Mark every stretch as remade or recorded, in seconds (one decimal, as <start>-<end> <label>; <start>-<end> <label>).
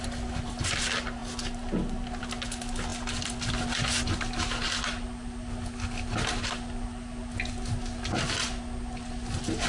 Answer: 0.0-9.7 recorded